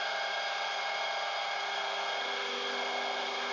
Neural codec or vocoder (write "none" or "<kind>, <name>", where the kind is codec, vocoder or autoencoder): none